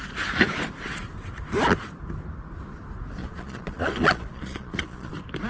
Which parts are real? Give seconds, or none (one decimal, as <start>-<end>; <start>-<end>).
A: 0.0-3.2; 5.1-5.5